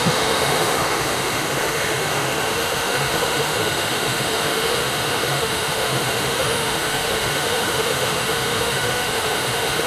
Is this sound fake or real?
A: fake